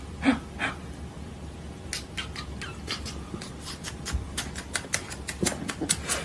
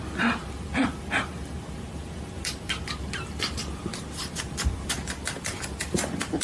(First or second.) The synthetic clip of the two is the second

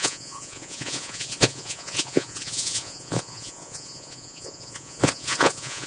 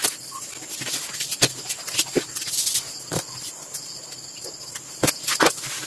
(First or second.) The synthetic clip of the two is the first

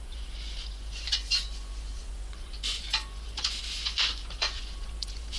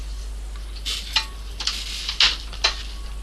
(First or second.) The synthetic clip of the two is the first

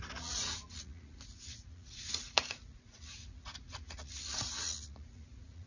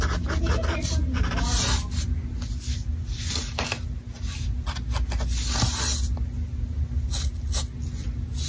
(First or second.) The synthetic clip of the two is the first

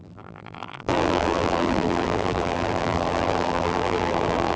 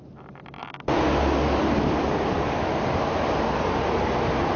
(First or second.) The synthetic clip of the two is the first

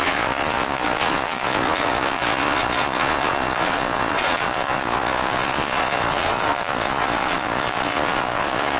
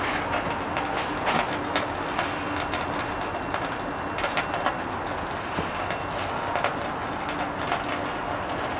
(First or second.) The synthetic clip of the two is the first